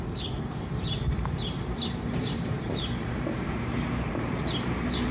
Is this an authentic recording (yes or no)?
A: no